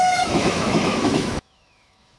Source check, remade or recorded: remade